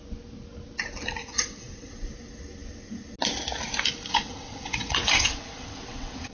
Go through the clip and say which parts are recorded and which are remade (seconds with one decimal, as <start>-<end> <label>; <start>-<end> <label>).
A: 0.0-1.2 recorded; 1.2-1.9 remade; 1.9-4.1 recorded; 4.1-6.3 remade

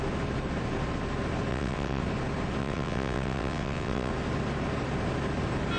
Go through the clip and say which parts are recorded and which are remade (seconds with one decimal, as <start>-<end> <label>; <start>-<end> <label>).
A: 0.0-1.5 recorded; 1.5-2.0 remade; 2.0-2.6 recorded; 2.6-4.1 remade; 4.1-5.8 recorded

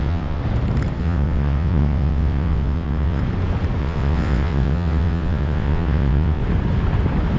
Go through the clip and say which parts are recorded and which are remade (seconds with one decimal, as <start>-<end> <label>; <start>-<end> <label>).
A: 0.0-0.4 remade; 0.4-1.0 recorded; 1.0-3.2 remade; 3.2-3.8 recorded; 3.8-6.4 remade; 6.4-7.4 recorded

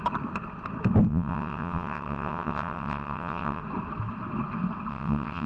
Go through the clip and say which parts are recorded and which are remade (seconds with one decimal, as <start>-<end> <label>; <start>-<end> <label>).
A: 0.0-1.1 recorded; 1.1-3.6 remade; 3.6-4.9 recorded; 4.9-5.5 remade

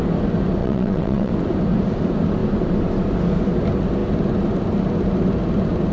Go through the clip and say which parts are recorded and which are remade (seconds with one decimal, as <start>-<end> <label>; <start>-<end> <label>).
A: 0.0-0.6 recorded; 0.6-1.3 remade; 1.3-5.9 recorded

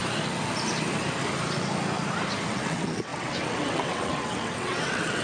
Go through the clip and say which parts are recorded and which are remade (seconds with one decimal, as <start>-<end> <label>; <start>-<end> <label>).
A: 0.0-2.5 recorded; 2.5-5.2 remade

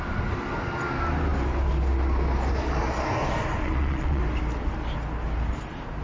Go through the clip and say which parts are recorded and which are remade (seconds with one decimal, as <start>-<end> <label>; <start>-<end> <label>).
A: 0.0-3.6 recorded; 3.6-4.2 remade; 4.2-6.0 recorded

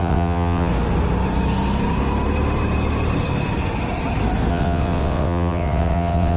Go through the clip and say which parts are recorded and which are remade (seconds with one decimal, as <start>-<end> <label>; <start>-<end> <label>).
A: 0.0-0.7 remade; 0.7-4.5 recorded; 4.5-6.4 remade